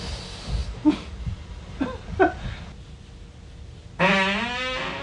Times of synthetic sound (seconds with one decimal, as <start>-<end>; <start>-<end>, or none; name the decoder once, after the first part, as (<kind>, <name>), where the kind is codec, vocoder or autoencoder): none